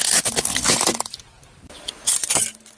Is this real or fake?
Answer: real